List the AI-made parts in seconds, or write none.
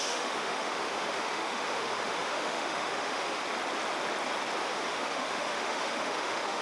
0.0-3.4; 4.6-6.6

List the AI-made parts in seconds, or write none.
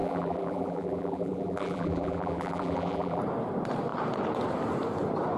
0.0-3.2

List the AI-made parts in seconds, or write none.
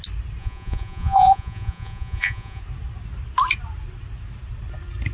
0.4-2.6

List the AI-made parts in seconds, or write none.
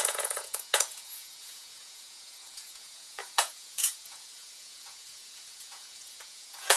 0.0-6.8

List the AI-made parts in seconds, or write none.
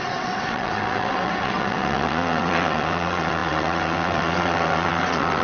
0.0-5.4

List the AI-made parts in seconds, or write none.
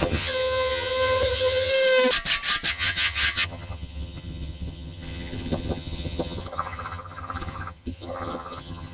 0.0-1.7; 2.7-8.9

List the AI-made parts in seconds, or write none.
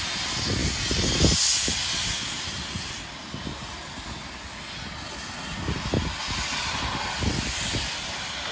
none